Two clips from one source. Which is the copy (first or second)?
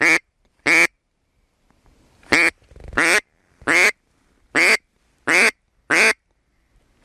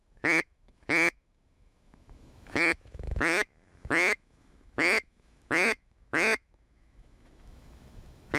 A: second